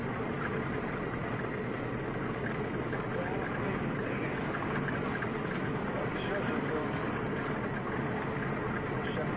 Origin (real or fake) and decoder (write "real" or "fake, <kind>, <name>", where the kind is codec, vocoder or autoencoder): real